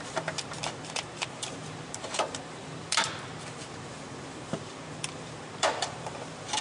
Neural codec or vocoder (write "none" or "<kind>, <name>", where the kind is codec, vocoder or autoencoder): vocoder, BigVGAN v2